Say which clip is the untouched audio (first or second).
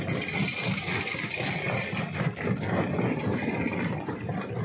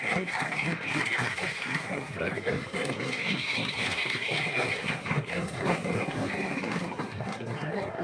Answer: first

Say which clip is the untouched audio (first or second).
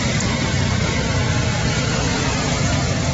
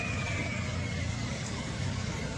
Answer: first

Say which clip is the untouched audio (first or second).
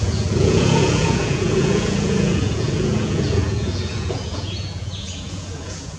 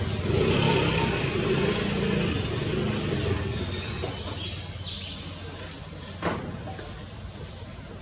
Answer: second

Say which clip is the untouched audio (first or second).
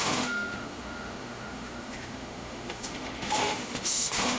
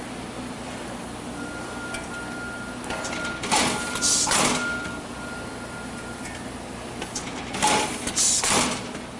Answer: second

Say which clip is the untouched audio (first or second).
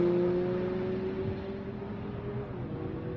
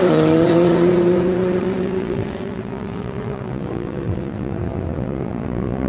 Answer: first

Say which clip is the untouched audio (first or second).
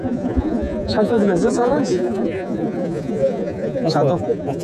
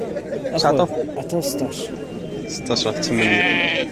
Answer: second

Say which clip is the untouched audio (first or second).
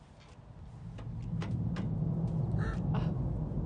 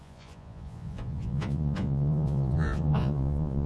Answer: first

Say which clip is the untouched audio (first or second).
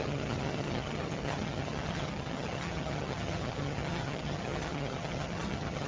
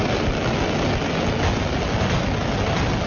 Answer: second